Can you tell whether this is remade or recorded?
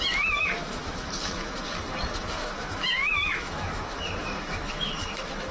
remade